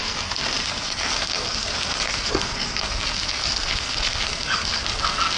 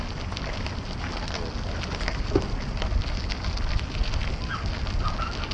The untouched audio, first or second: second